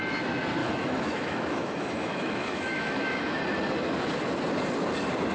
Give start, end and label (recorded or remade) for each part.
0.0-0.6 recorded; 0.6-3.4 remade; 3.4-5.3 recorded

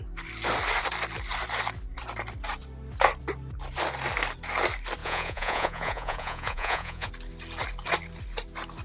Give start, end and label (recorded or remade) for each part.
0.0-5.0 recorded; 5.0-7.1 remade; 7.1-8.8 recorded

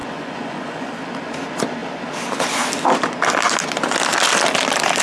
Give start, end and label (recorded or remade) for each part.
0.0-0.9 remade; 0.9-5.0 recorded

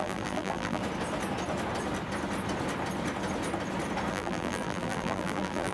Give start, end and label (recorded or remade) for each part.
0.0-0.8 remade; 0.8-4.1 recorded; 4.1-5.7 remade

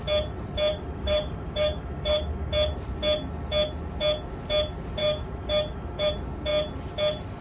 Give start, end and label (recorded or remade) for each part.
0.0-0.7 recorded; 0.7-2.5 remade; 2.5-5.0 recorded; 5.0-6.1 remade; 6.1-7.4 recorded

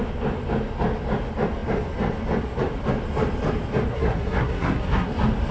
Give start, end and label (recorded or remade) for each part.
0.0-3.9 recorded; 3.9-5.1 remade; 5.1-5.5 recorded

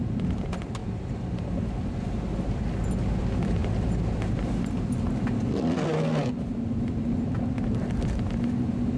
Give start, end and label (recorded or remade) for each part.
0.0-9.0 recorded